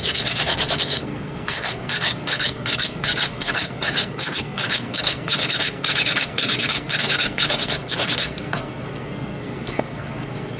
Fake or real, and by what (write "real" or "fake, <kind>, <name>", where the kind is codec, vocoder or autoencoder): fake, codec, SNAC